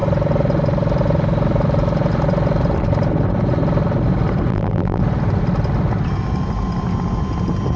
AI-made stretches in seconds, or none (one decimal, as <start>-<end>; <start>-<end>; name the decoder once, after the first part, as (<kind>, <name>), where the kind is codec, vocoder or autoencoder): 4.5-5.0 (vocoder, BigVGAN v2)